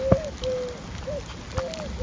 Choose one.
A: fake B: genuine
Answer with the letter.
B